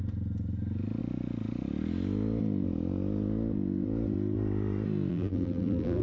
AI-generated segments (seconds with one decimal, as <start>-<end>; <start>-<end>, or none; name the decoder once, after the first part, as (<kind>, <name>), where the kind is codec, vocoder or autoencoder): 5.1-6.0 (vocoder, BigVGAN v2)